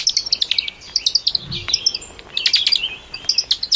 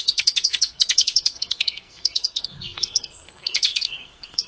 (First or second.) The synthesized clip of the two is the second